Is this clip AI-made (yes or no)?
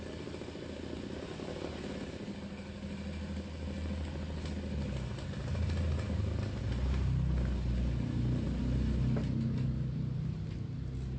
no